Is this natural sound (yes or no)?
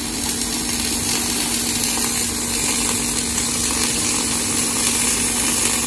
yes